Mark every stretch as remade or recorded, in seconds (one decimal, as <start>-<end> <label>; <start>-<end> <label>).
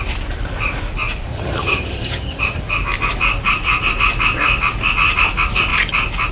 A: 0.0-1.3 recorded; 1.3-2.6 remade; 2.6-6.3 recorded